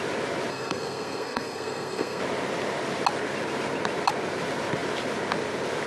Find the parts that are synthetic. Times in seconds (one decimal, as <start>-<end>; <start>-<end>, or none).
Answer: 0.5-2.2